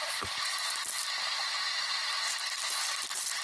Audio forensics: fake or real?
real